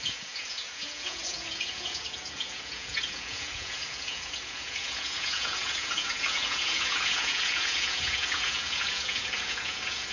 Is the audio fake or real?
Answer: fake